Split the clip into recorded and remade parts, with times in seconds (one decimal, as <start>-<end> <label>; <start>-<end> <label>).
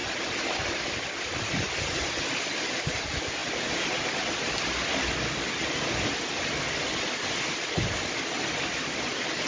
0.0-9.5 recorded